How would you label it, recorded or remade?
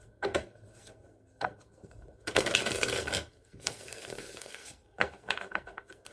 remade